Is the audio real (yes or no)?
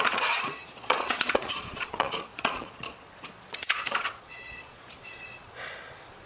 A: no